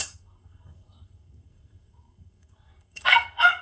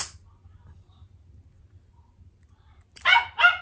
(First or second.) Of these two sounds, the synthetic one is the first